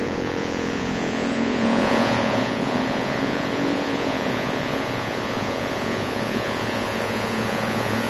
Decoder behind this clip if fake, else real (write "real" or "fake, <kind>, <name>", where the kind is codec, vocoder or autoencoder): fake, vocoder, Vocos